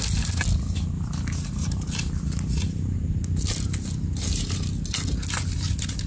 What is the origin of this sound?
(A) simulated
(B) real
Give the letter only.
B